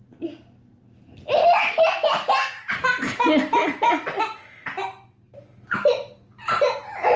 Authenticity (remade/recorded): recorded